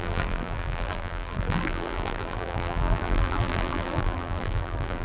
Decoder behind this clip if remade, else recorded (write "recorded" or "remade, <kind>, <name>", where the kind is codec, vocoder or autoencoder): remade, vocoder, BigVGAN v2